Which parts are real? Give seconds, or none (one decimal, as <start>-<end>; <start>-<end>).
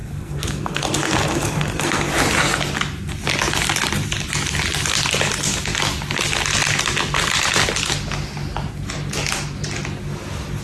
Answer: 2.1-10.6